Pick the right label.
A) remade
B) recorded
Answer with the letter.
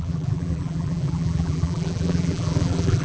A